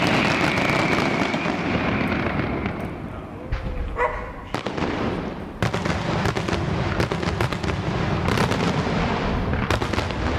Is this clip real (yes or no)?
yes